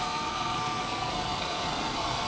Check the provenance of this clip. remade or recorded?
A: remade